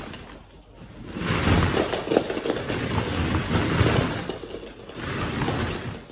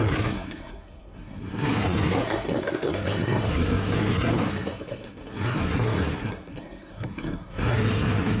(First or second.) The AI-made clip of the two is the second